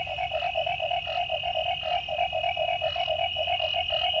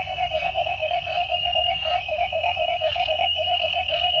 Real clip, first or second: first